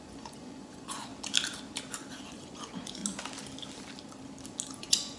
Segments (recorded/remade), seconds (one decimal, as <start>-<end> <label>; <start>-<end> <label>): 0.0-1.1 remade; 1.1-2.1 recorded; 2.1-3.0 remade; 3.0-4.8 recorded; 4.8-5.2 remade